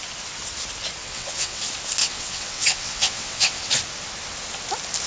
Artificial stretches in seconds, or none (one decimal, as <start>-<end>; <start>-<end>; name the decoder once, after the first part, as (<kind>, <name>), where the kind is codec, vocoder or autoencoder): 1.0-1.6 (vocoder, WaveNeXt); 2.0-3.7